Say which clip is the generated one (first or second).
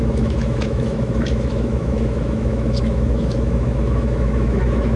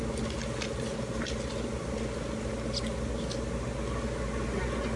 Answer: first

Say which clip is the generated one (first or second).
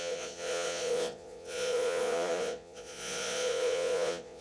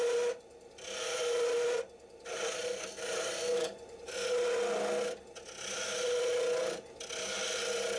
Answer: first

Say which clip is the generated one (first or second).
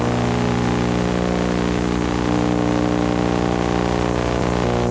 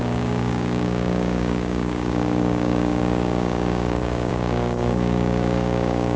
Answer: second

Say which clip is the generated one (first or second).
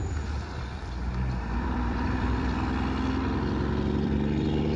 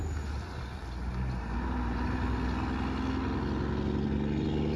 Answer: first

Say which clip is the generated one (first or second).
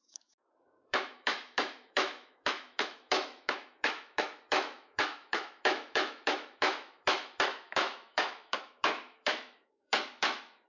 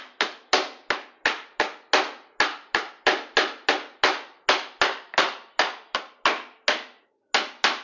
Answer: first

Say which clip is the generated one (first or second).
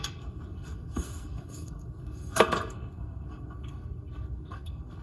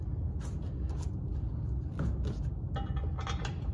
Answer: first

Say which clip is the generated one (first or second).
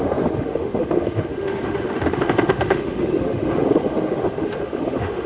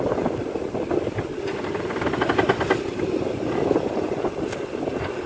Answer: first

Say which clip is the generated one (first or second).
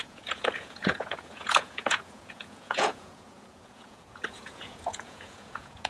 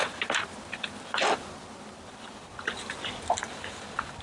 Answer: first